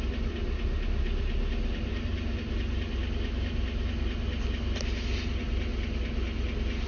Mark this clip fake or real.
real